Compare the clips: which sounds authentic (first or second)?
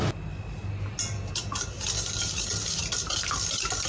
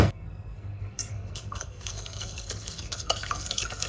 first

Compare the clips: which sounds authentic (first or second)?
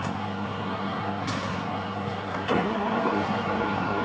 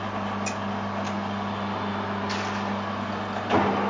second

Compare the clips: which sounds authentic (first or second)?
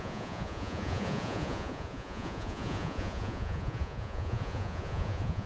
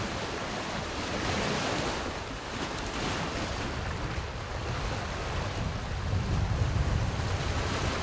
second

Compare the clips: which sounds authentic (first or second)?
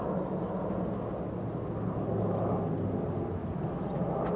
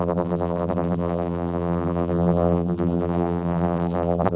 first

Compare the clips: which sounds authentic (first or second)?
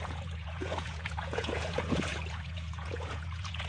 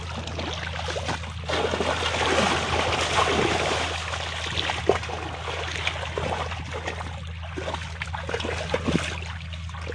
second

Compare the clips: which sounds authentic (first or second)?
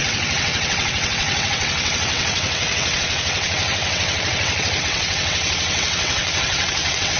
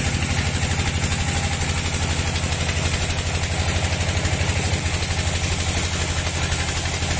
second